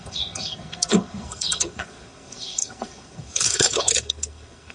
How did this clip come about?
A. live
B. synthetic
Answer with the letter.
B